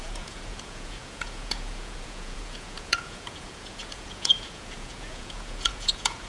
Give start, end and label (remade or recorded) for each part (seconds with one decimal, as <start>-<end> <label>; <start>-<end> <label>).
0.0-6.3 remade